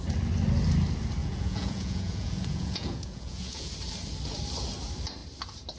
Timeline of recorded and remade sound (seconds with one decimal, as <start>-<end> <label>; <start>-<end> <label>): 0.0-1.2 recorded; 1.2-3.7 remade; 3.7-5.8 recorded